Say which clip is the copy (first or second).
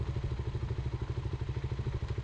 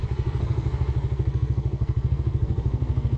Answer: second